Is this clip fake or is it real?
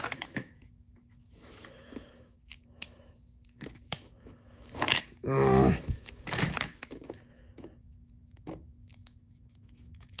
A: fake